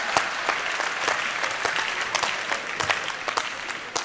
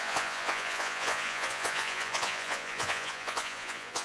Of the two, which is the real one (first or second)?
first